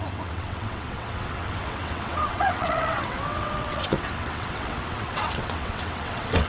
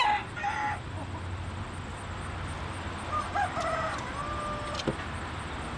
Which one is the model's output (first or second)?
first